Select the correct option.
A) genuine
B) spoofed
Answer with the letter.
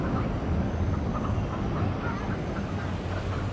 A